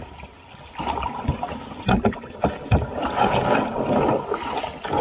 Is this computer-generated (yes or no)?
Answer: no